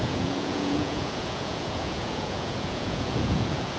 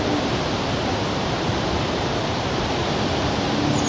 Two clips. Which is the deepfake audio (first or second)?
first